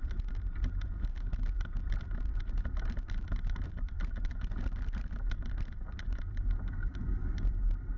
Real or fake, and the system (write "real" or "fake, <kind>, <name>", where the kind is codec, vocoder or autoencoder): fake, vocoder, BigVGAN v2